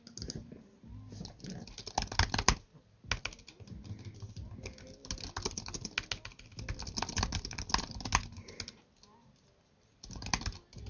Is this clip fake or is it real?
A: real